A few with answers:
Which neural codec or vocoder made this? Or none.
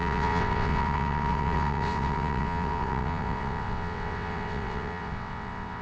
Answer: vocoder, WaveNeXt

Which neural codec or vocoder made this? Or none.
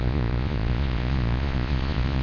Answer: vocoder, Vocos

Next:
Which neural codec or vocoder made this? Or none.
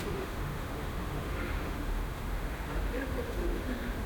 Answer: autoencoder, DAC-VAE